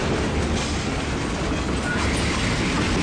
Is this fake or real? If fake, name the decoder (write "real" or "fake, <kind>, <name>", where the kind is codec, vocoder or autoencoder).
real